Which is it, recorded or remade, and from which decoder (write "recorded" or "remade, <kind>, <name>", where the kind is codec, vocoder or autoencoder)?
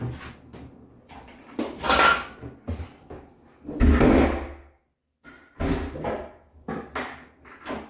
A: recorded